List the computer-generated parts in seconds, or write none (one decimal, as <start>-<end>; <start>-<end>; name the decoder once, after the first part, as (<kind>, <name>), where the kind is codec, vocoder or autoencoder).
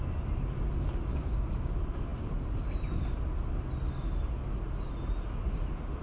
1.1-1.7 (codec, DAC)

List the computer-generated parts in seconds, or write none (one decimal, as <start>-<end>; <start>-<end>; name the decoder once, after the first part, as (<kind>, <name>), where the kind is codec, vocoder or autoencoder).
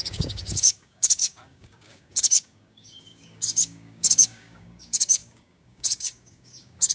0.0-6.9 (codec, DAC)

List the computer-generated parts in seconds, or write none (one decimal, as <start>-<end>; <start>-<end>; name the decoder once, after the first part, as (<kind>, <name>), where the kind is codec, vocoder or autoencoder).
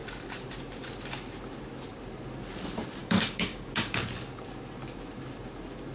3.0-4.0 (codec, DAC)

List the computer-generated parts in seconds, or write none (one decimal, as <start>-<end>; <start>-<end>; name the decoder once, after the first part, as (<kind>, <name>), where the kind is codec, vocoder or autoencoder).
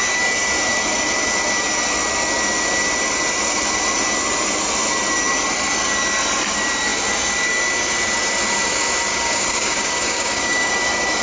9.1-10.7 (codec, DAC)